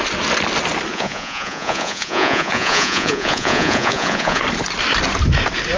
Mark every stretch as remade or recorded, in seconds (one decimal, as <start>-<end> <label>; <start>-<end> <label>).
0.0-0.9 recorded; 0.9-4.4 remade; 4.4-5.8 recorded